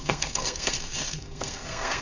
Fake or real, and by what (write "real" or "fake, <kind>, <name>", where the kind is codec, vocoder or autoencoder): fake, codec, SNAC